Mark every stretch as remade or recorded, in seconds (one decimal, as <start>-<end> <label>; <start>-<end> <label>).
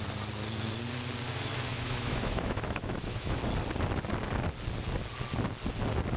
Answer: 0.0-1.7 recorded; 1.7-3.4 remade; 3.4-6.2 recorded